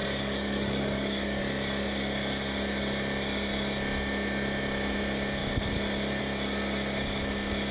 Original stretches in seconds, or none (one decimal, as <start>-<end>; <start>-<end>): 1.4-7.7